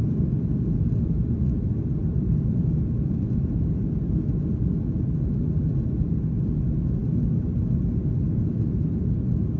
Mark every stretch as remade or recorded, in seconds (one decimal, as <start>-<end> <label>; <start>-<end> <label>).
0.0-2.0 recorded; 2.0-5.6 remade; 5.6-9.6 recorded